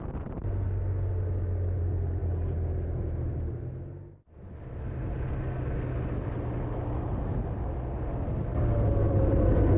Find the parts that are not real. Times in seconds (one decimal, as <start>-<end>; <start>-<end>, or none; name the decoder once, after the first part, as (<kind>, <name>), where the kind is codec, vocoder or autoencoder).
none